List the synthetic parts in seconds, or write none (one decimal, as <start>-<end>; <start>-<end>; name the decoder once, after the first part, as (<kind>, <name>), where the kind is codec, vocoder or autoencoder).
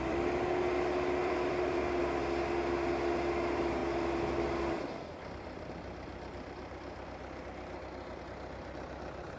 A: 0.0-9.4 (vocoder, BigVGAN v2)